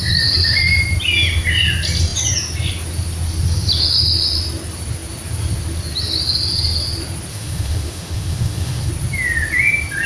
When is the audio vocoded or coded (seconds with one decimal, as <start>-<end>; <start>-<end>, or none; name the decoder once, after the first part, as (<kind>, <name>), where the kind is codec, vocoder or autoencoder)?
7.3-8.9 (autoencoder, DAC-VAE)

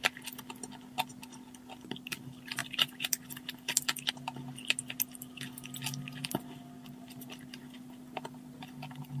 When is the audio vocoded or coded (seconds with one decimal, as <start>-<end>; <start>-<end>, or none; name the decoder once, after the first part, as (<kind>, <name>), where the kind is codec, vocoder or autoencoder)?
2.6-4.1 (vocoder, BigVGAN v2); 7.6-9.2

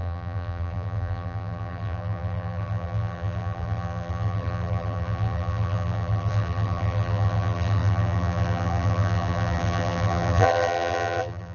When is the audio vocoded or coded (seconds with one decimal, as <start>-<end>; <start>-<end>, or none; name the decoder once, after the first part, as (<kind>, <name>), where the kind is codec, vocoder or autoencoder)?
0.0-11.5 (vocoder, BigVGAN v2)

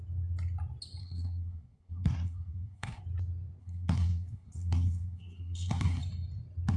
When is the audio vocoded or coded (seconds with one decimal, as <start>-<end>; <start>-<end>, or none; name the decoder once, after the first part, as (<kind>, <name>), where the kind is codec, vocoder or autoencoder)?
1.0-3.0 (codec, SNAC); 3.6-6.0

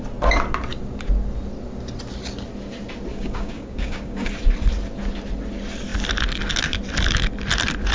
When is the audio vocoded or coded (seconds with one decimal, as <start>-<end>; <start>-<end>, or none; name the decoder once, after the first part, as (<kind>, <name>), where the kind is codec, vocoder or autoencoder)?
3.1-4.3 (codec, DAC)